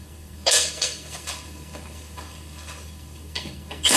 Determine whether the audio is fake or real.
fake